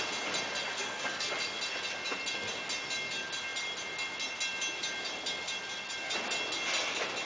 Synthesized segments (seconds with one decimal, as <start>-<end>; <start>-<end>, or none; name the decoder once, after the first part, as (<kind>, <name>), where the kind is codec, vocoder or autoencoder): 0.7-1.3 (codec, SNAC)